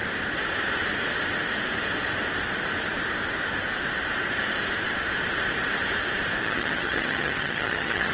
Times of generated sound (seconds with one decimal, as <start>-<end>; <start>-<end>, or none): 6.4-8.1